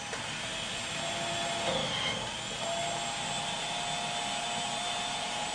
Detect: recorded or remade recorded